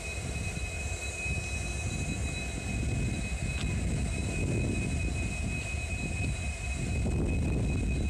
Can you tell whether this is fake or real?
real